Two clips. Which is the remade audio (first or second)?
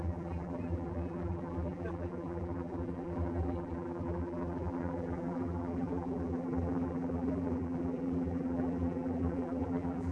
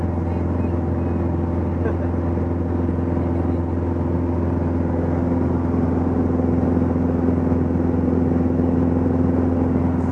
first